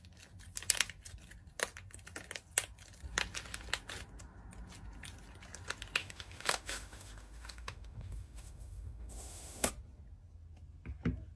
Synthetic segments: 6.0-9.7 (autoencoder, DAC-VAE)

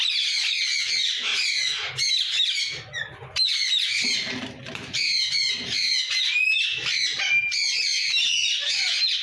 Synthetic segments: 1.3-5.1 (vocoder, BigVGAN v2); 7.1-7.8

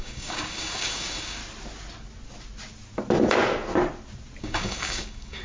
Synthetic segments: 0.0-1.4 (codec, DAC); 4.4-5.4

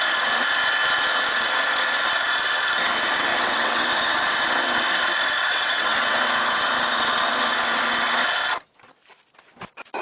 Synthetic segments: 3.3-3.8 (vocoder, WaveNeXt); 5.5-6.2